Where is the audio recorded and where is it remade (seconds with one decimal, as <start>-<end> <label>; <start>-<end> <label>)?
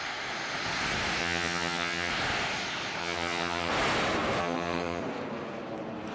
0.0-1.2 recorded; 1.2-2.1 remade; 2.1-3.0 recorded; 3.0-3.7 remade; 3.7-4.4 recorded; 4.4-5.0 remade; 5.0-6.1 recorded